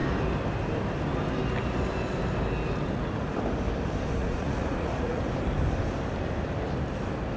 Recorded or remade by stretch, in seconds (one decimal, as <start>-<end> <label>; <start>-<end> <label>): 0.0-4.2 recorded; 4.2-5.2 remade; 5.2-7.4 recorded